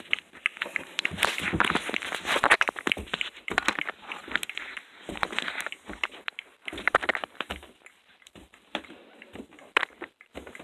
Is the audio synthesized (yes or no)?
no